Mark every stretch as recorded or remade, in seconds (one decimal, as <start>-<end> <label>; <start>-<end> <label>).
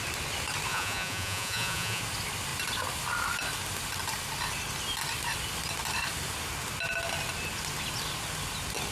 0.0-0.7 recorded; 0.7-2.0 remade; 2.0-8.9 recorded